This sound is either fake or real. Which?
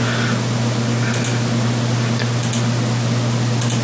real